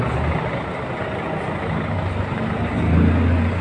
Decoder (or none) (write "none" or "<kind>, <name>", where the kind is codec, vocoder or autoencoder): none